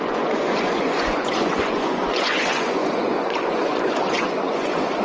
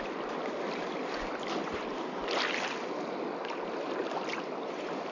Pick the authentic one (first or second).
second